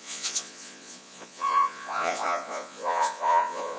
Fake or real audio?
fake